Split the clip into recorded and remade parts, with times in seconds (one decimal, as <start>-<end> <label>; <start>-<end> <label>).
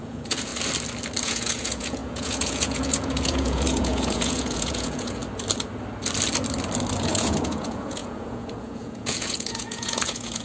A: 0.0-0.5 remade; 0.5-1.2 recorded; 1.2-5.2 remade; 5.2-7.0 recorded; 7.0-10.4 remade